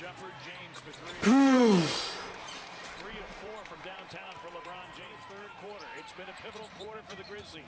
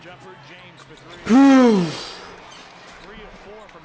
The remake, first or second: first